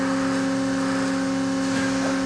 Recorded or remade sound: recorded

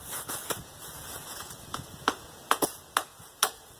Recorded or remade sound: remade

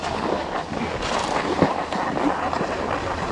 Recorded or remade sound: recorded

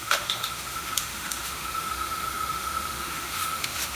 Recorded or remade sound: remade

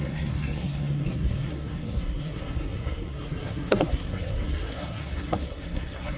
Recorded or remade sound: remade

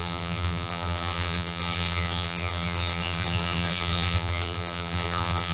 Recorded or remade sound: remade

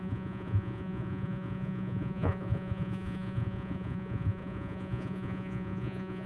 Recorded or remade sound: remade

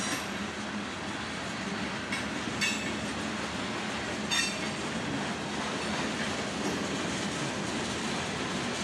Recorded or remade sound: recorded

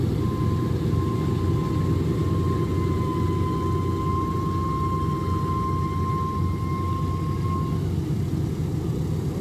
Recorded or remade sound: recorded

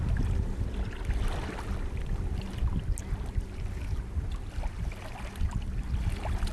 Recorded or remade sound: recorded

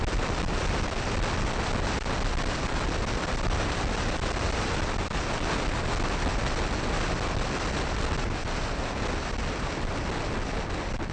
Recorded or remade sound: recorded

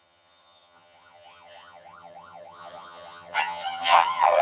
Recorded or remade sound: remade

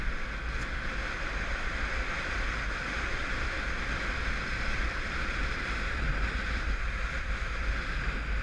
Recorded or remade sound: recorded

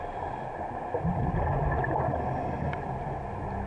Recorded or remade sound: recorded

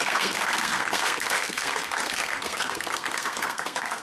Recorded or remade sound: remade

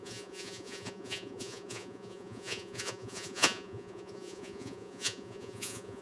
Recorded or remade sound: remade